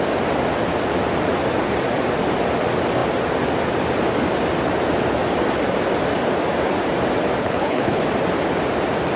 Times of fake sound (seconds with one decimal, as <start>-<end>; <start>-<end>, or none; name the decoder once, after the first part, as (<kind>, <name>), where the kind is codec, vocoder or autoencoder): 7.4-8.0 (codec, HILCodec)

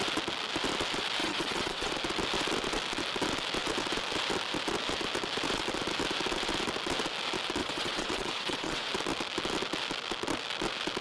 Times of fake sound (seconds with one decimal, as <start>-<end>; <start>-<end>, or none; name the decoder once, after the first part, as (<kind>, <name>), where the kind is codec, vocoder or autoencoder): 1.2-1.9 (vocoder, WaveNeXt); 7.6-8.9